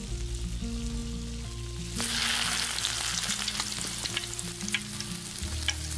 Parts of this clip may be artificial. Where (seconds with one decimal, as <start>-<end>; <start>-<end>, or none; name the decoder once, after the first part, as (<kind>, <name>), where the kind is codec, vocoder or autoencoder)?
none